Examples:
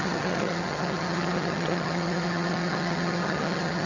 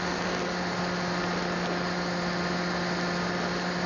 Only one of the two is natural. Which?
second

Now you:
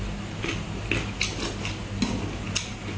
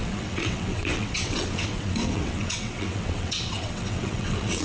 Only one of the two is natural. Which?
first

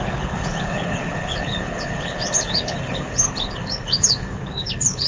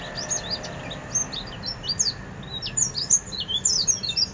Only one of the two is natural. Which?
second